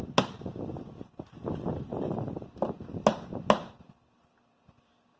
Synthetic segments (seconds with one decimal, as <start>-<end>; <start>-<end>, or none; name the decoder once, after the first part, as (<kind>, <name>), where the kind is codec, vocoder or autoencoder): none